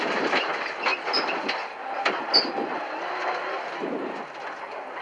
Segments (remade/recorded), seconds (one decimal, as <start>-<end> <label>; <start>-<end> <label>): 0.0-5.0 recorded